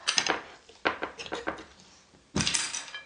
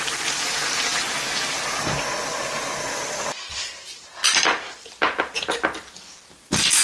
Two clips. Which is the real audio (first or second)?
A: second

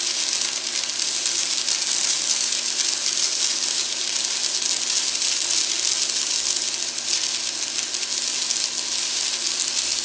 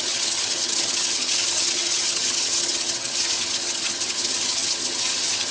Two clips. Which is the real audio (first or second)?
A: first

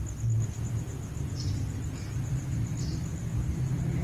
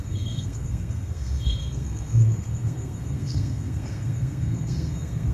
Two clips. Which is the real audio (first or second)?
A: first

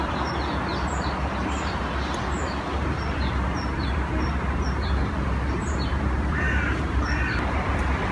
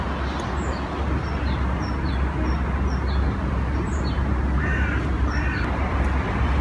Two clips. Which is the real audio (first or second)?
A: second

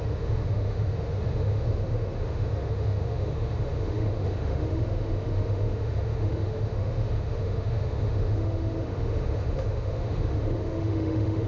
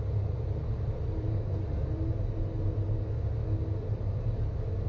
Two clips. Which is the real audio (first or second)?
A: second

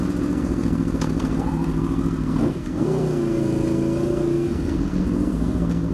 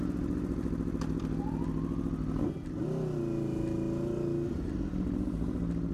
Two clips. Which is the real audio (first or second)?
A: second